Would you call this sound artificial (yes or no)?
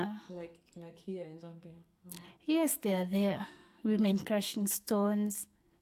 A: yes